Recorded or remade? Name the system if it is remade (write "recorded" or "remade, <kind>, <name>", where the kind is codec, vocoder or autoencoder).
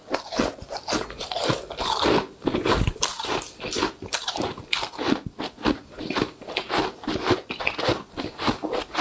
recorded